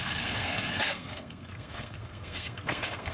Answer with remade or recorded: remade